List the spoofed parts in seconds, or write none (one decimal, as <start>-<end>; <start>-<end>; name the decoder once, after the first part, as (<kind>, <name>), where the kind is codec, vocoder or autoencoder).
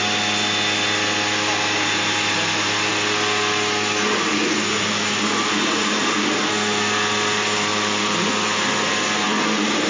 7.7-8.3 (vocoder, BigVGAN v2)